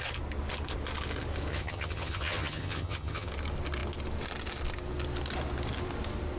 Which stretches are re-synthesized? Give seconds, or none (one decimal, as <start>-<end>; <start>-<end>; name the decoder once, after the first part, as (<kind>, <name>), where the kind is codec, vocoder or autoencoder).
1.5-3.3 (vocoder, HiFi-GAN)